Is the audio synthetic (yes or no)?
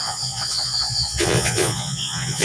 yes